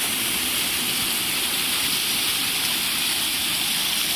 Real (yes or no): yes